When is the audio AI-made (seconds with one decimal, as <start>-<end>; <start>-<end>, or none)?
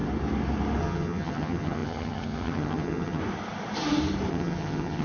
0.8-3.2; 4.3-5.0